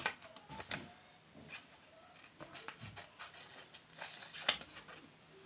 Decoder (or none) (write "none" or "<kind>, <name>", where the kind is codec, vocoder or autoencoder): none